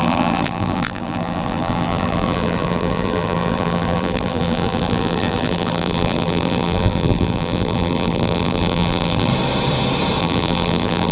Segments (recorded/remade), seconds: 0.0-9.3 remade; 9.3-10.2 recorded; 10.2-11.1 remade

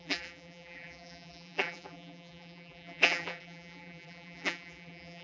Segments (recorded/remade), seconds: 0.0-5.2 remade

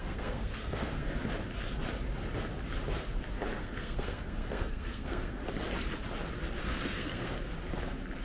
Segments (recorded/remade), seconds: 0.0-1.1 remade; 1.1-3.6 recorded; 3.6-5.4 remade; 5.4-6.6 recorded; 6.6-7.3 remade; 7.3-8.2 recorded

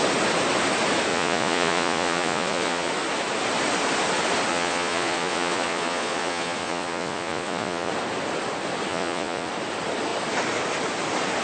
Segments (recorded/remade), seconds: 0.0-1.1 recorded; 1.1-2.9 remade; 2.9-4.5 recorded; 4.5-7.9 remade; 7.9-8.9 recorded; 8.9-9.5 remade; 9.5-11.4 recorded

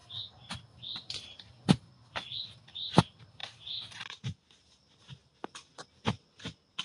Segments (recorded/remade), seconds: 0.0-0.5 remade; 0.5-5.2 recorded; 5.2-6.8 remade

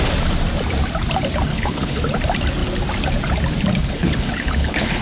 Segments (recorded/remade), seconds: 0.0-1.5 recorded; 1.5-2.0 remade; 2.0-3.8 recorded; 3.8-5.0 remade

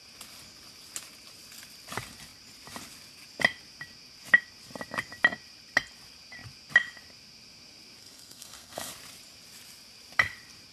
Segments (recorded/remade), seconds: 0.0-8.0 recorded; 8.0-8.9 remade; 8.9-10.7 recorded